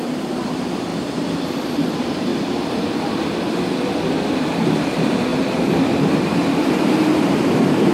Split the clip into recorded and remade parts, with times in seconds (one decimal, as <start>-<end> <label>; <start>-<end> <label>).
0.0-0.9 remade; 0.9-1.5 recorded; 1.5-2.3 remade; 2.3-4.4 recorded; 4.4-7.9 remade